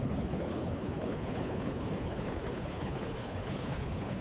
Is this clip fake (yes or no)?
yes